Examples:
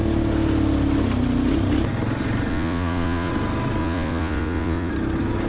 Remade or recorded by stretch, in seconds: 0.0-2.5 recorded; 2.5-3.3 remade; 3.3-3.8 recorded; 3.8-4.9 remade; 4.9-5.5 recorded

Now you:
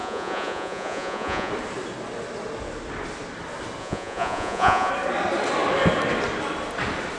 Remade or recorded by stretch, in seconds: 0.0-1.5 remade; 1.5-3.8 recorded; 3.8-4.9 remade; 4.9-7.2 recorded